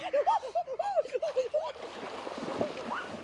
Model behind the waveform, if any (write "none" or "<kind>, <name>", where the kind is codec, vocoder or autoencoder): none